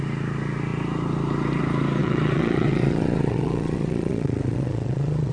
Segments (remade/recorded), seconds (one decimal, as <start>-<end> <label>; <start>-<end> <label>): 0.0-2.0 recorded; 2.0-5.3 remade

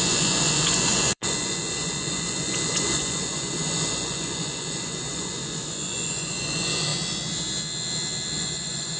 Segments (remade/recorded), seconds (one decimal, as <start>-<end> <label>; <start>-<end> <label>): 0.0-6.9 remade; 6.9-8.4 recorded; 8.4-9.0 remade

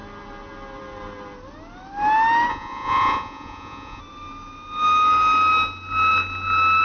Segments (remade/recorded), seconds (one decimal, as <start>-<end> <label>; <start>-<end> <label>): 0.0-2.5 recorded; 2.5-4.0 remade; 4.0-6.8 recorded

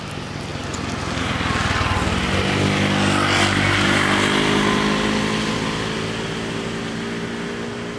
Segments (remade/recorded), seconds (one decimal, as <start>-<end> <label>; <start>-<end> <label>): 0.0-8.0 recorded

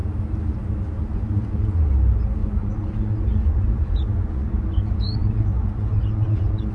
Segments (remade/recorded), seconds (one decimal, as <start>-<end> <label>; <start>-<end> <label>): 0.0-1.1 recorded; 1.1-1.8 remade; 1.8-2.4 recorded; 2.4-6.7 remade

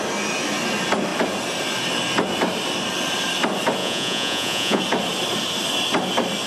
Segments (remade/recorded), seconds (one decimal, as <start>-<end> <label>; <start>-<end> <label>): 0.0-3.8 recorded; 3.8-4.8 remade; 4.8-6.5 recorded

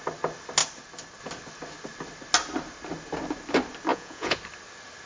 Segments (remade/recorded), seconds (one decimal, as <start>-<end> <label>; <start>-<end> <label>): 0.0-3.9 recorded; 3.9-4.4 remade; 4.4-5.1 recorded